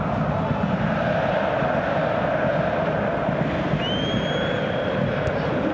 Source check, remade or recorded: recorded